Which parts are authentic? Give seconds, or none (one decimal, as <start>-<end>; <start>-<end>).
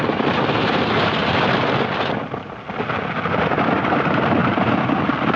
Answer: 1.2-3.4; 4.4-5.4